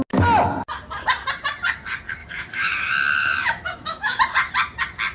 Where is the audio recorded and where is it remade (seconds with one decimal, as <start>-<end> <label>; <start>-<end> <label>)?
0.0-2.2 recorded; 2.2-4.2 remade; 4.2-5.1 recorded